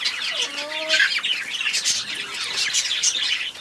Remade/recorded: recorded